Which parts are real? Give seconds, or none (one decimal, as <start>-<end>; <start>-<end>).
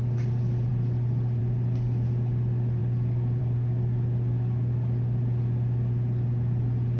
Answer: 0.0-7.0